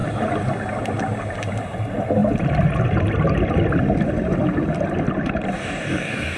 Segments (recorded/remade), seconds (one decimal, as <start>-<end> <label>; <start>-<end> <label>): 0.0-5.6 recorded; 5.6-6.4 remade